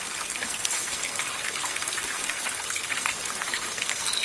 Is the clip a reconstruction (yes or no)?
yes